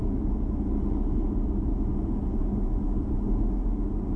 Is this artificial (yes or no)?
no